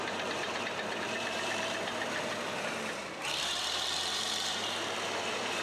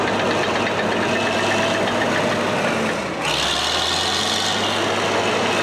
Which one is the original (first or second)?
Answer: second